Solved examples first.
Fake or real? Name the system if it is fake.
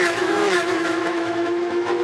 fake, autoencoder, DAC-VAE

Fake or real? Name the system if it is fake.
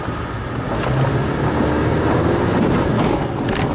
real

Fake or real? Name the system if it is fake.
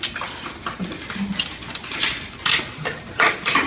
real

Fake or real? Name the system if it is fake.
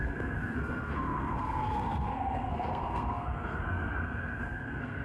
fake, codec, SNAC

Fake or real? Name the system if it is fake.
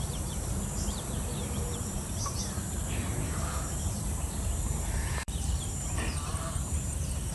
fake, vocoder, BigVGAN v2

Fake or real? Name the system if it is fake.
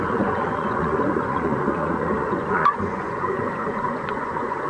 fake, vocoder, Vocos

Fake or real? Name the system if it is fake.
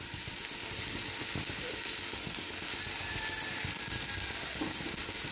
real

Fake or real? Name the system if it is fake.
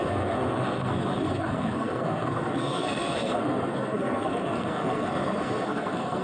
fake, codec, SNAC